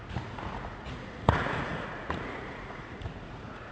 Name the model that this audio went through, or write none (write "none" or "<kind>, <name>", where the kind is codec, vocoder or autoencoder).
vocoder, Vocos